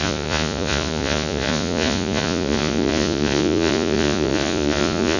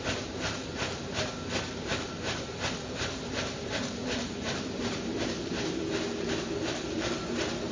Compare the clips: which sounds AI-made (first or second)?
first